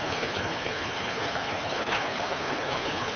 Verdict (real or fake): fake